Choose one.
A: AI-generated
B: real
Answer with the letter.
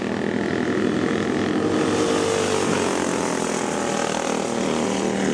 B